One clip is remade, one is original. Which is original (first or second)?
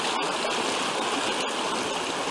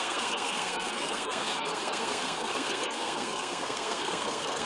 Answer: first